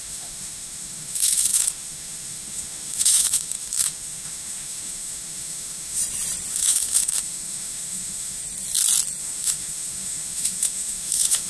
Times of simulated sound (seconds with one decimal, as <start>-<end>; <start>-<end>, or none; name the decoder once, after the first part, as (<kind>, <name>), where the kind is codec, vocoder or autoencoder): 0.0-6.0 (autoencoder, DAC-VAE); 6.5-8.4; 9.2-11.5